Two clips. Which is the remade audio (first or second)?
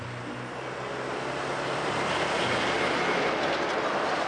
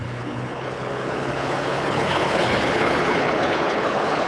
second